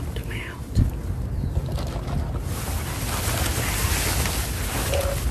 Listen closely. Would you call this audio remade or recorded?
recorded